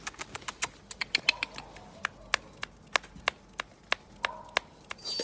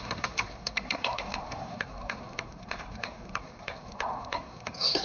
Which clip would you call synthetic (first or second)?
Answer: second